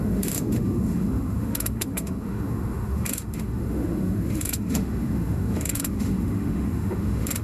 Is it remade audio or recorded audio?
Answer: remade